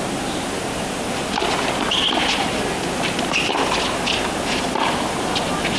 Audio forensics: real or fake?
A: real